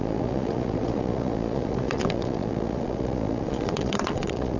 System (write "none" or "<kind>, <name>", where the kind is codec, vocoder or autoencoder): vocoder, Vocos